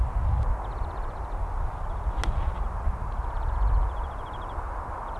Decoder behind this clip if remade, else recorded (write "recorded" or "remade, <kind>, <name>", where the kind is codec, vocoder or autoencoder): recorded